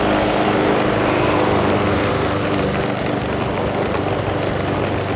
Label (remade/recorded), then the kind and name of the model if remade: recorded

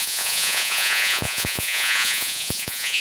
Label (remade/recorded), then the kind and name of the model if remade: remade, vocoder, Vocos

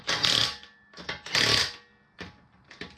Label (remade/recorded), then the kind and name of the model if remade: recorded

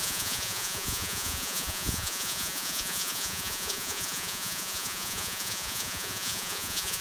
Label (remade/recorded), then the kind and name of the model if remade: remade, vocoder, Vocos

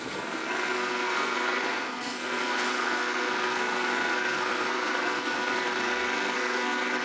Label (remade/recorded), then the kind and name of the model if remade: remade, codec, SNAC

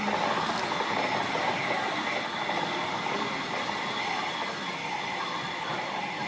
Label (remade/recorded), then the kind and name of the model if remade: recorded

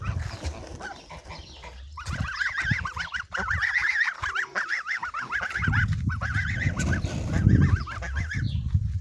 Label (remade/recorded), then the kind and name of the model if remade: recorded